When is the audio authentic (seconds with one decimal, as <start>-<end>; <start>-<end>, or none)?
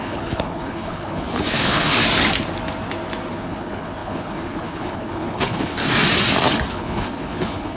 2.0-3.3; 5.9-6.7